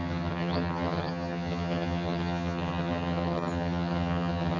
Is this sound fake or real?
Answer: fake